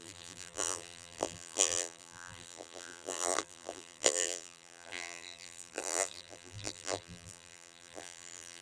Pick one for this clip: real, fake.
fake